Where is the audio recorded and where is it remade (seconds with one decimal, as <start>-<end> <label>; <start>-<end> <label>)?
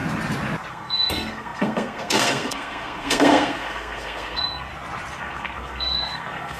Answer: 0.0-0.7 recorded; 0.7-4.7 remade; 4.7-5.2 recorded; 5.2-6.6 remade